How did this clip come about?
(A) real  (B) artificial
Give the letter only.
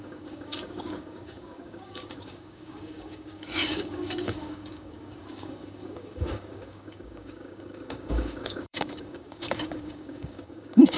B